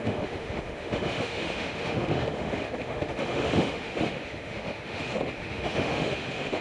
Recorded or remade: remade